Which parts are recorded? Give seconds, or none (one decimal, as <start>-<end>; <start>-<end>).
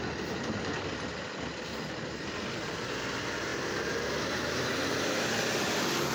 0.0-6.1